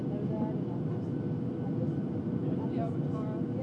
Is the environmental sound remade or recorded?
recorded